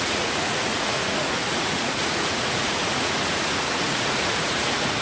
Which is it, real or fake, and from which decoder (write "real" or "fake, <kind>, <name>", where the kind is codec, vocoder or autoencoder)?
fake, vocoder, Vocos